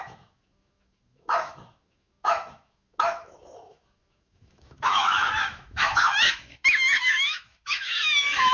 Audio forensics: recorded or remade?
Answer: remade